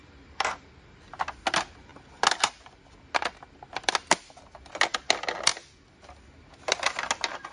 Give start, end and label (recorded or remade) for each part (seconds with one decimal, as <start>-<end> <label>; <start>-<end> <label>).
0.0-0.7 remade; 0.7-7.5 recorded

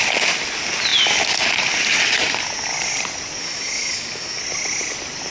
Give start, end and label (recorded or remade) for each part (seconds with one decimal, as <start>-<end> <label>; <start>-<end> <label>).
0.0-3.4 recorded; 3.4-4.4 remade; 4.4-5.3 recorded

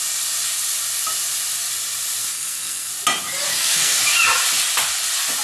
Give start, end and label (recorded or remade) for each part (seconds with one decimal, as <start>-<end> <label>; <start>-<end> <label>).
0.0-2.2 recorded; 2.2-2.9 remade; 2.9-3.5 recorded; 3.5-4.0 remade; 4.0-5.4 recorded

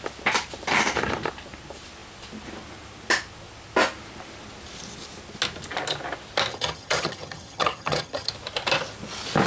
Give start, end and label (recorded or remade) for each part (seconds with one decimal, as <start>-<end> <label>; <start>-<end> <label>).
0.0-6.5 recorded; 6.5-8.3 remade; 8.3-9.5 recorded

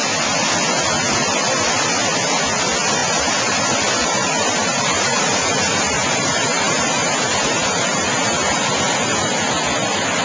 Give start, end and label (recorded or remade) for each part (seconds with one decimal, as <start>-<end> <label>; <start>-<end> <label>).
0.0-3.0 recorded; 3.0-3.6 remade; 3.6-4.0 recorded; 4.0-8.7 remade; 8.7-10.2 recorded

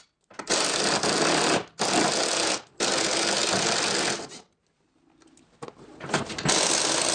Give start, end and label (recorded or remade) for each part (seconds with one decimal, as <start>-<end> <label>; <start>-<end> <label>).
0.0-7.1 recorded